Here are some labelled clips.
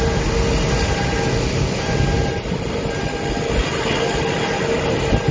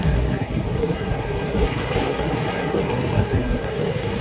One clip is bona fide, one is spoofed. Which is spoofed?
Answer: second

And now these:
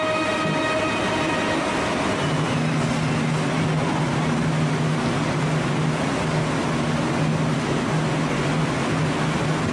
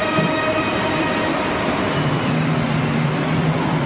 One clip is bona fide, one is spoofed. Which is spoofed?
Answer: second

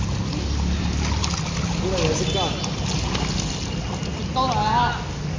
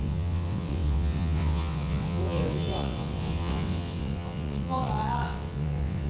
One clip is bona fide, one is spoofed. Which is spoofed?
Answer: second